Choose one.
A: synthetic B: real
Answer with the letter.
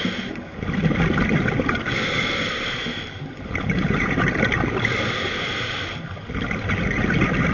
B